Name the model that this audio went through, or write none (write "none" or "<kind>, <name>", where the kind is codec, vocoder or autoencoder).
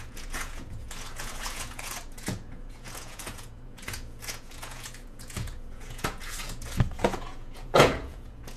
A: vocoder, Vocos